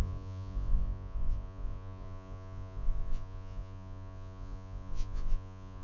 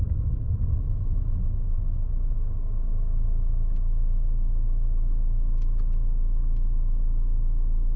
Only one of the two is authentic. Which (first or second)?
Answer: second